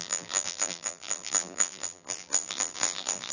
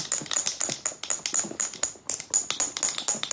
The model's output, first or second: first